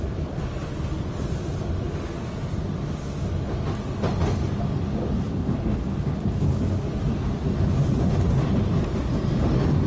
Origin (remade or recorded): recorded